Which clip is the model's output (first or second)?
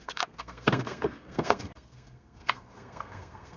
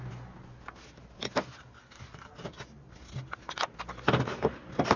first